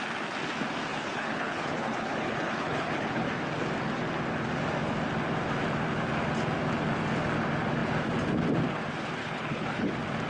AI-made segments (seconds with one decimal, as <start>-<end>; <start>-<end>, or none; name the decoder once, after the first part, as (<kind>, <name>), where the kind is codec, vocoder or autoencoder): 0.9-3.4 (codec, HILCodec); 9.2-9.9